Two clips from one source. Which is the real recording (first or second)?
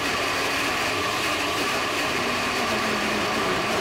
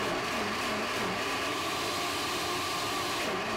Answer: second